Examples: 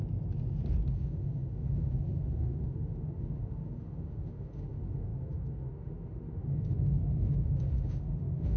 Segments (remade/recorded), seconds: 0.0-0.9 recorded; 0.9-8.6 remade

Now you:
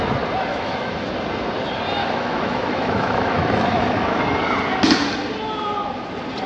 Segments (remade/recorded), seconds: 0.0-0.5 recorded; 0.5-1.1 remade; 1.1-2.0 recorded; 2.0-4.2 remade; 4.2-6.5 recorded

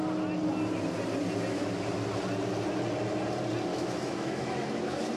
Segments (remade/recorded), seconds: 0.0-3.7 recorded; 3.7-5.2 remade

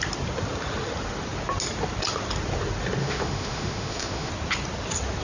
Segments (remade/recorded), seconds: 0.0-3.0 recorded; 3.0-4.3 remade; 4.3-5.2 recorded

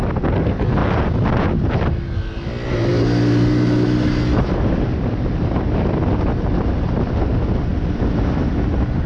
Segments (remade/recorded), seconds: 0.0-9.1 recorded

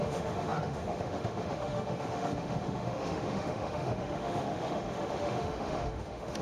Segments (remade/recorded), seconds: 0.0-6.4 remade

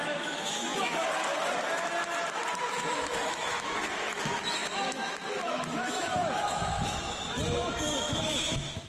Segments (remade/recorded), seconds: 0.0-1.0 remade; 1.0-2.6 recorded; 2.6-8.9 remade

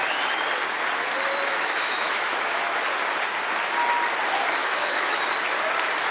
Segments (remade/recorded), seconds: 0.0-1.5 recorded; 1.5-2.8 remade; 2.8-4.6 recorded; 4.6-5.2 remade; 5.2-6.1 recorded